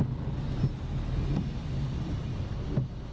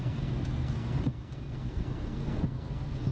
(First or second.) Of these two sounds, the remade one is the second